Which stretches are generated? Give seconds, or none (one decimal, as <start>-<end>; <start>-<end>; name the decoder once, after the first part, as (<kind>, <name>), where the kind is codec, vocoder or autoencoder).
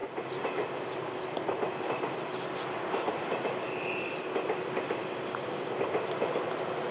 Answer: none